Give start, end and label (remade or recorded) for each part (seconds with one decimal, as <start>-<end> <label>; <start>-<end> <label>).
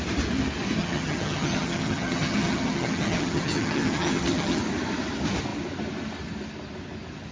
0.0-0.8 recorded; 0.8-4.6 remade; 4.6-7.3 recorded